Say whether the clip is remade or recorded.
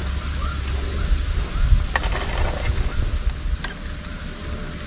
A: recorded